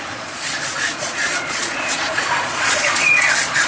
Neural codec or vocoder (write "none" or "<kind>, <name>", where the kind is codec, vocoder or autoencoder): vocoder, Vocos